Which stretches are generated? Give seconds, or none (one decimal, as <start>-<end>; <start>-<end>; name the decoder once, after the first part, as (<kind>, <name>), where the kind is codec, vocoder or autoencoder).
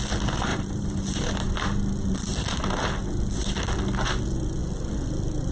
0.5-1.5 (vocoder, BigVGAN v2)